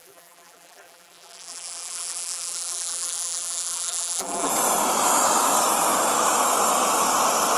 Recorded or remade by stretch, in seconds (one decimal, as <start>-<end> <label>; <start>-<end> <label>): 0.0-4.5 remade; 4.5-7.6 recorded